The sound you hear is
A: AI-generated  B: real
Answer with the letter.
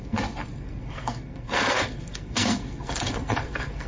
A